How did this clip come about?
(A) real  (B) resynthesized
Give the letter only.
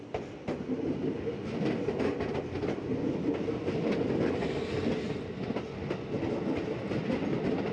A